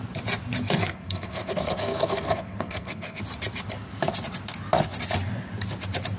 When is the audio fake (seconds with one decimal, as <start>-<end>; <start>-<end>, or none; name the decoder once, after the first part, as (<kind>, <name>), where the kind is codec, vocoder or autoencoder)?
0.8-3.2 (codec, SNAC)